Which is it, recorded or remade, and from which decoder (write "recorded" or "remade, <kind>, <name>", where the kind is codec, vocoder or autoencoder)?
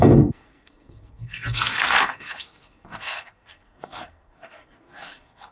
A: remade, codec, SNAC